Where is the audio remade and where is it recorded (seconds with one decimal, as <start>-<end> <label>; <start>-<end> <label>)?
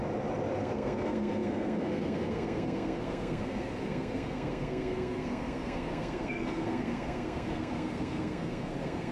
0.0-0.6 recorded; 0.6-9.1 remade